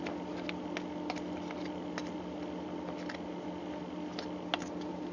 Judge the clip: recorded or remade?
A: recorded